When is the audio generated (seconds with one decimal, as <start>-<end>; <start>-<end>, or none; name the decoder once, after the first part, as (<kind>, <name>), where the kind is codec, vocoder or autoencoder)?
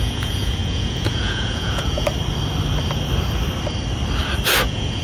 0.0-2.1 (vocoder, Vocos); 4.6-5.0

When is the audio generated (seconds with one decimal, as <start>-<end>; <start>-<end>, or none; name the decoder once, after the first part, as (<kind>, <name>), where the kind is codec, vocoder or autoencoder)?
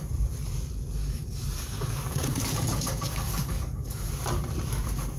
1.0-4.1 (codec, DAC)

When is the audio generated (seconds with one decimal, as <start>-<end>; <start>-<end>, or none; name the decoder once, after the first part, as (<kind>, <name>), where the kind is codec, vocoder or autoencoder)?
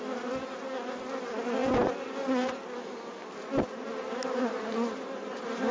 none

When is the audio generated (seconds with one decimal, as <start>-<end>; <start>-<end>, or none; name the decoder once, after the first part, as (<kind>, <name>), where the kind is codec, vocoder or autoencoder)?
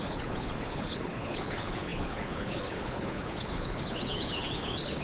0.0-5.0 (codec, HILCodec)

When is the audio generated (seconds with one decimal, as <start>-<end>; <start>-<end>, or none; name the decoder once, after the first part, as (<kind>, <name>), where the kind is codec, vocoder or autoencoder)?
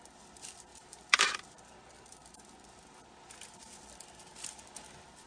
0.7-1.3 (vocoder, BigVGAN v2)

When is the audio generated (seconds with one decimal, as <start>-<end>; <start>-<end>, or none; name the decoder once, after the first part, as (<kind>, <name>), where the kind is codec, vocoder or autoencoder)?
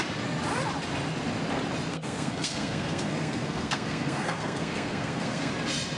1.9-5.5 (codec, SNAC)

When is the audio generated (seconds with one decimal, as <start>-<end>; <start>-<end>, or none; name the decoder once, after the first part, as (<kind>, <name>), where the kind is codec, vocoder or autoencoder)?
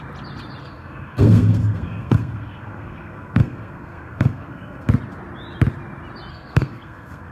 0.6-4.9 (codec, SNAC); 6.3-7.3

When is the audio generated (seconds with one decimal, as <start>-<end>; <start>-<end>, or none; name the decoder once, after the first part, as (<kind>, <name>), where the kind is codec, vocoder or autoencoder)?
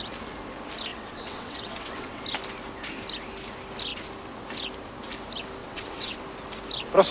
0.9-2.2 (vocoder, WaveNeXt); 5.6-6.2